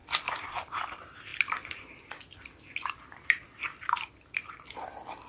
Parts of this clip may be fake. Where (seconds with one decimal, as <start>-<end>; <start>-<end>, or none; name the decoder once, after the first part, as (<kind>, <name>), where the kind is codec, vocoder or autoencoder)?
0.0-0.7 (vocoder, BigVGAN v2); 1.3-4.5